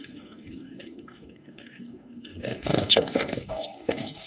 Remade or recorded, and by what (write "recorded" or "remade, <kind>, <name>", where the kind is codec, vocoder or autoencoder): remade, codec, DAC